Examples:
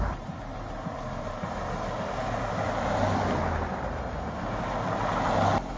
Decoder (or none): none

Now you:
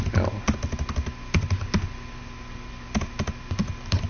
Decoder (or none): none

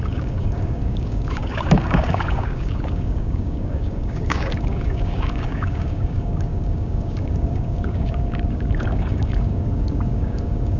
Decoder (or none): codec, DAC